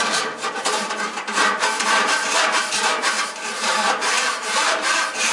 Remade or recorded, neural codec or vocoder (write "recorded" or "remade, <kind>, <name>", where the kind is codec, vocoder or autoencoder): remade, vocoder, BigVGAN v2